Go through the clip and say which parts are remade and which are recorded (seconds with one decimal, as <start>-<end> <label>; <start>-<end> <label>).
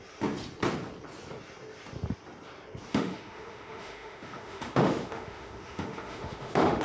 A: 0.0-2.9 recorded; 2.9-6.8 remade